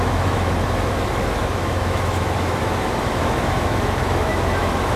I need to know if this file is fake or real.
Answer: fake